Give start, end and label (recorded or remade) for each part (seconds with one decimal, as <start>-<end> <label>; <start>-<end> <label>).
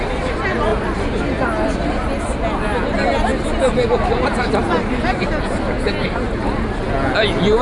0.0-7.6 recorded